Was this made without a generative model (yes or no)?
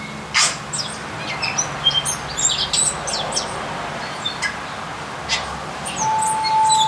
yes